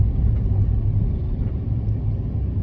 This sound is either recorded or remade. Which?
recorded